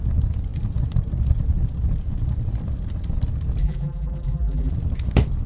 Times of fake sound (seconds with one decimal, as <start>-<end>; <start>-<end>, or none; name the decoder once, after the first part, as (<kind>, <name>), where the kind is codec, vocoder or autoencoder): 3.6-4.7 (vocoder, BigVGAN v2)